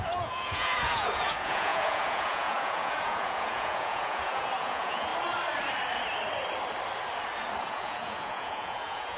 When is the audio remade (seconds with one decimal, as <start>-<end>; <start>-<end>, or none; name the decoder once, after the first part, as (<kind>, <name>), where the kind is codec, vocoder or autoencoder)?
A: 0.0-5.1 (vocoder, Vocos); 7.6-9.2